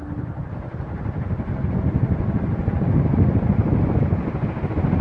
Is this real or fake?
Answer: real